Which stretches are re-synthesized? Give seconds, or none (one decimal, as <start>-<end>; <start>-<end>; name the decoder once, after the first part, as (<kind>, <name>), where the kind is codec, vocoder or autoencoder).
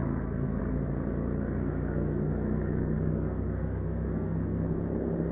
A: 0.0-0.6 (codec, SNAC); 1.6-4.8